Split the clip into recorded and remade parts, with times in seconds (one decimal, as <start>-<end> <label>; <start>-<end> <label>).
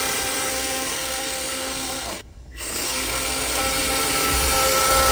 0.0-0.5 recorded; 0.5-3.6 remade; 3.6-5.1 recorded